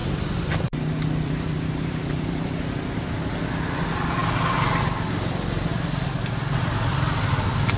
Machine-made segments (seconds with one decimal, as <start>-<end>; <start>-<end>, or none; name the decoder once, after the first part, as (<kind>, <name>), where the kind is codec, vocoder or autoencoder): 0.0-3.0 (vocoder, BigVGAN v2)